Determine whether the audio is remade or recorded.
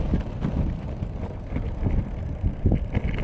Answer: recorded